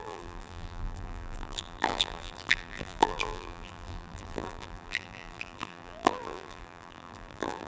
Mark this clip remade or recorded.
remade